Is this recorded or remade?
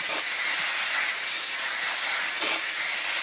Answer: recorded